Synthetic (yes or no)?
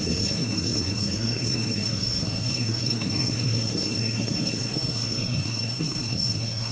yes